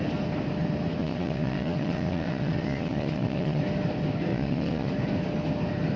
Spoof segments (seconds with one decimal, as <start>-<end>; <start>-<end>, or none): 1.0-3.6; 4.3-4.9